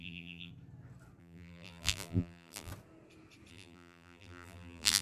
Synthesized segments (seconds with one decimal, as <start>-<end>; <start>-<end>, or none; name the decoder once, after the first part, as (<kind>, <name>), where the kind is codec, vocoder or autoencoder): 0.0-0.5 (vocoder, BigVGAN v2); 1.2-2.7; 3.5-5.0